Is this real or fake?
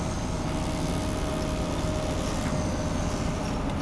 real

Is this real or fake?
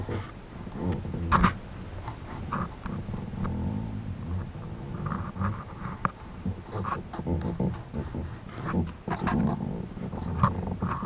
real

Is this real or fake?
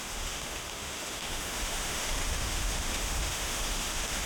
fake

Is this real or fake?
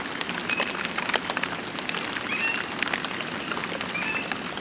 real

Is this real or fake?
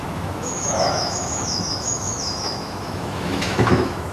fake